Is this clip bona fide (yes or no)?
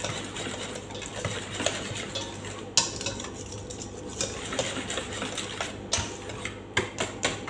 yes